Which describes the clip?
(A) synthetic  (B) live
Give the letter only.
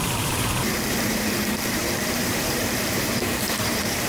A